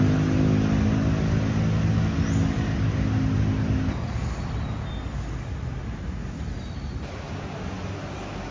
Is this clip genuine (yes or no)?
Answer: yes